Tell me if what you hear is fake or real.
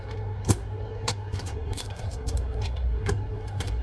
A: fake